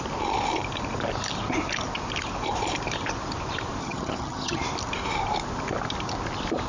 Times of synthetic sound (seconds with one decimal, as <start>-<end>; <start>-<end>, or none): 3.8-4.6